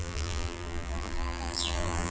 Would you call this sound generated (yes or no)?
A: yes